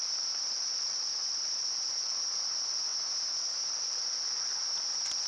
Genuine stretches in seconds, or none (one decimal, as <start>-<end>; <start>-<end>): 2.9-3.7